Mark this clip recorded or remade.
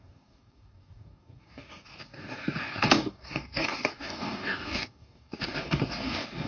remade